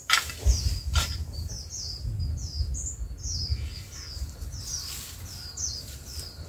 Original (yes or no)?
yes